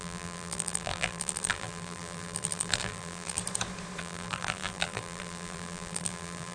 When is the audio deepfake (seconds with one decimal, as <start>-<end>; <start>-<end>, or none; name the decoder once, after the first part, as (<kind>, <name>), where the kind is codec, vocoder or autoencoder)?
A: 0.0-3.4 (vocoder, BigVGAN v2); 4.0-6.5